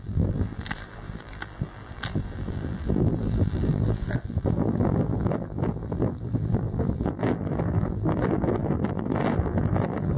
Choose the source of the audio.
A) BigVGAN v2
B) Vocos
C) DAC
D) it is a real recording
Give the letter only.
A